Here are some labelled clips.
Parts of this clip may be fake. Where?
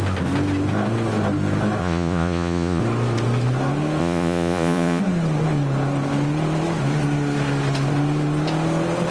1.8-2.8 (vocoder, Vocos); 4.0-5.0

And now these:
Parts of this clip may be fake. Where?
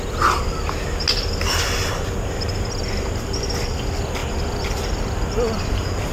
none